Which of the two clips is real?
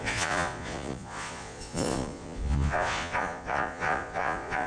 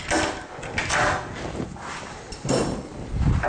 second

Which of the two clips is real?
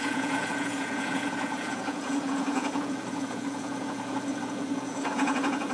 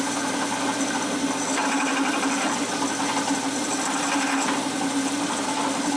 second